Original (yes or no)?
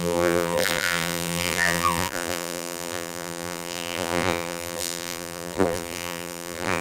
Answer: no